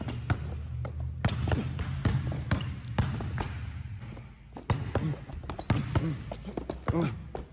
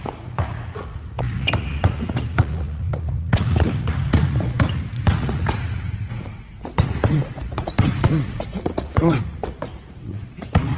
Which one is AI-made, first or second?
second